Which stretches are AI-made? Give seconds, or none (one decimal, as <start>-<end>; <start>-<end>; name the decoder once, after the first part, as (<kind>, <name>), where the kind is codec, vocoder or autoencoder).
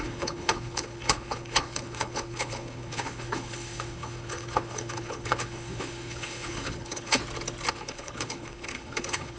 0.0-7.2 (codec, HILCodec); 7.7-9.4